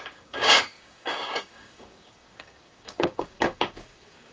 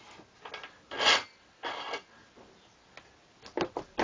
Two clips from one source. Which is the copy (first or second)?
first